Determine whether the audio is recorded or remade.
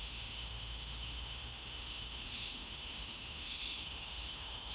remade